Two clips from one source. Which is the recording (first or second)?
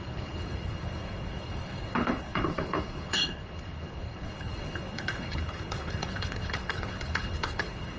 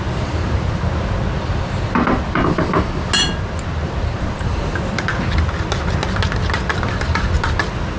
second